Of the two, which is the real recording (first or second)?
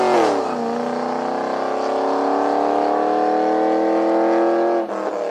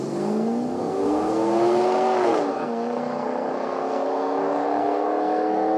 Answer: first